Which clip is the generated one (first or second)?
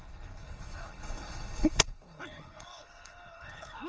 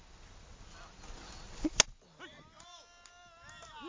first